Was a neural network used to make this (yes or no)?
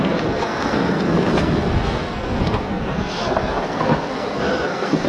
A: yes